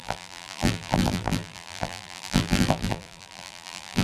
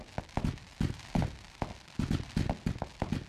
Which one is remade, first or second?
first